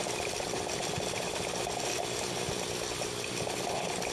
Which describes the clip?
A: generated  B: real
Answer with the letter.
B